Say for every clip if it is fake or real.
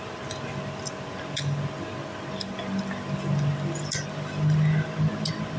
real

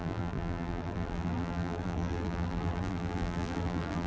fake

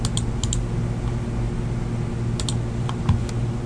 real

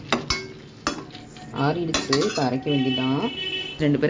real